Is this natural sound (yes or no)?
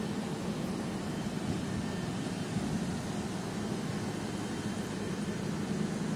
yes